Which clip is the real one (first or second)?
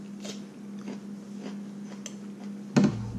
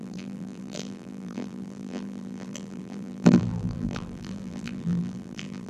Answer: first